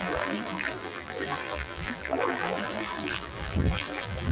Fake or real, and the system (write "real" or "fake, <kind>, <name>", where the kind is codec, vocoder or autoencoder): fake, vocoder, BigVGAN v2